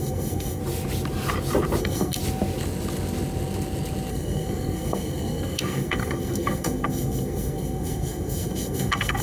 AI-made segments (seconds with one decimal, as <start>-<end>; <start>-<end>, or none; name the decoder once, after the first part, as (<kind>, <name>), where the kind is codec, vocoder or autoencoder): 0.0-0.6 (codec, SNAC); 1.8-2.2; 4.1-9.2